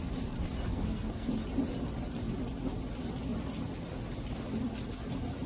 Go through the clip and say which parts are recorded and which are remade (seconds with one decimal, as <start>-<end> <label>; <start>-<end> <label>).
0.0-0.7 recorded; 0.7-1.3 remade; 1.3-5.5 recorded